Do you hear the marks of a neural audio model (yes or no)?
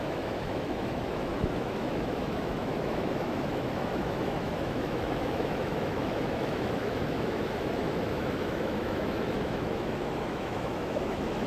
yes